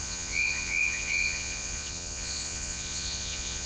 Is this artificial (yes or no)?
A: yes